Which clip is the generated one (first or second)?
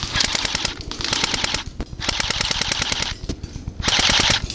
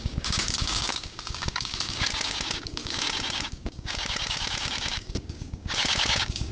second